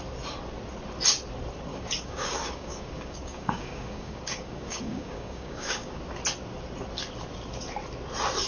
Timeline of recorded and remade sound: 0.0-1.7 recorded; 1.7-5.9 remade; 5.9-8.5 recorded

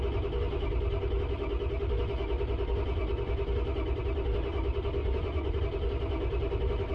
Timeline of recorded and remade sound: 0.0-5.0 recorded; 5.0-5.6 remade; 5.6-6.9 recorded